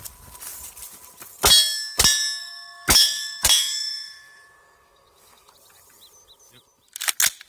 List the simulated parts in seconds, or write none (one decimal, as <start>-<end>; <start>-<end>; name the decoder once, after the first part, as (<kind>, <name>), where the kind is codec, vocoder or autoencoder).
2.4-5.5 (autoencoder, DAC-VAE)